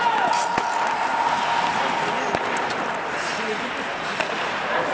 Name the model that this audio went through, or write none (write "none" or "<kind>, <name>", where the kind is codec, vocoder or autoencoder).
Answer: none